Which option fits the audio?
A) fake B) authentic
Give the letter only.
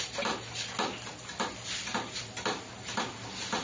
B